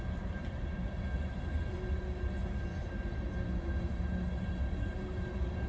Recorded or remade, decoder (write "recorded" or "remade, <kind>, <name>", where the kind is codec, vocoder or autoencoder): recorded